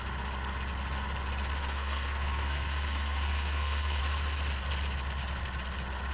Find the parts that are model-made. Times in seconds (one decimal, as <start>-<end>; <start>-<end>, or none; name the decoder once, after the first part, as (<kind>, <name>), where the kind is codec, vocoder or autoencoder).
1.6-4.0 (codec, SNAC)